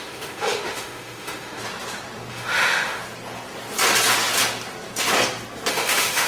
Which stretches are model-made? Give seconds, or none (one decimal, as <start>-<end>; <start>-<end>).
0.0-1.6; 2.3-3.0; 5.7-6.3